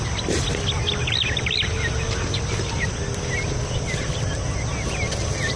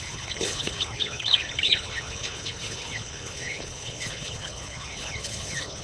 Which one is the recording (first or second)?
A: first